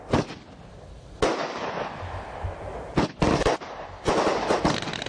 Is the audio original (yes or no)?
yes